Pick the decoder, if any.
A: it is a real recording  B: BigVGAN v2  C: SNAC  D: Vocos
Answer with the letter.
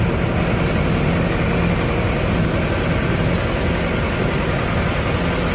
A